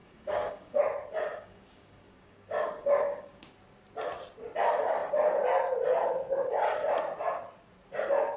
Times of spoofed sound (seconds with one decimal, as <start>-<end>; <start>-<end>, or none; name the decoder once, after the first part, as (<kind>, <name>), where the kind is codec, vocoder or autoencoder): 0.0-0.8 (codec, DAC); 1.3-3.5